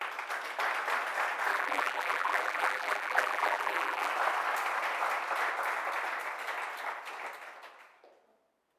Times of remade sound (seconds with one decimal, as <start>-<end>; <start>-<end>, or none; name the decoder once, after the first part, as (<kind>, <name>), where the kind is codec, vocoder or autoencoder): 1.5-4.1 (vocoder, BigVGAN v2)